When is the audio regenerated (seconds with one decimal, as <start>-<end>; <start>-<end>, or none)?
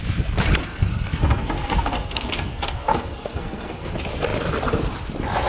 0.6-3.9